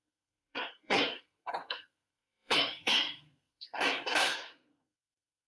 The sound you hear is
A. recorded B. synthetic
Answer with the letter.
B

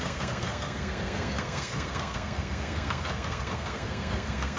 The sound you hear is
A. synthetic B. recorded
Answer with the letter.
A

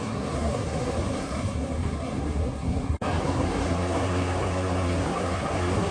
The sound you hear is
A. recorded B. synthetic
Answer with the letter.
B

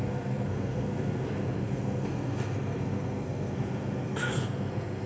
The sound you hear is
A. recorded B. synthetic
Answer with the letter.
B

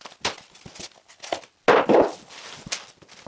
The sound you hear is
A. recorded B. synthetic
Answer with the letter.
A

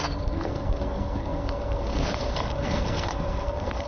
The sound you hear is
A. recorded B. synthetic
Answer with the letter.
B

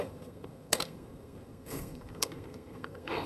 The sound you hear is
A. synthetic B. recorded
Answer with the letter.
A